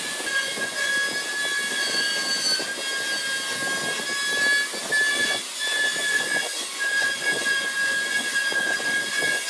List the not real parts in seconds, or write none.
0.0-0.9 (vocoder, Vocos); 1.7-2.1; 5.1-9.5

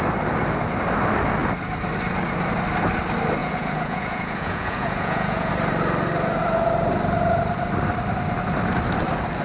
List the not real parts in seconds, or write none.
3.4-5.5 (vocoder, Vocos)

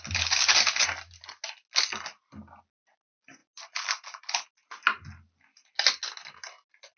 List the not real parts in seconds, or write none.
none